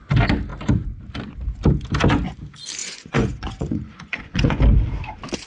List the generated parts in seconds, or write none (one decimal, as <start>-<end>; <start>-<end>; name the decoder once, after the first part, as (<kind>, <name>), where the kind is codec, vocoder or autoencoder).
2.8-4.6 (vocoder, Vocos)